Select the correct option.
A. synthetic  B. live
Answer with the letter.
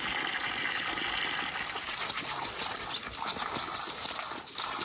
B